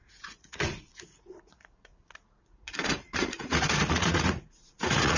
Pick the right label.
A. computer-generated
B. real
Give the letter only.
A